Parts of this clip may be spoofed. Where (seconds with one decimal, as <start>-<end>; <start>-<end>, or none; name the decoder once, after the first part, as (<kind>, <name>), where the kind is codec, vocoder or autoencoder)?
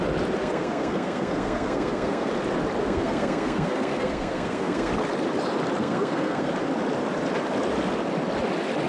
0.4-2.3 (codec, SNAC); 2.8-4.9; 5.8-6.5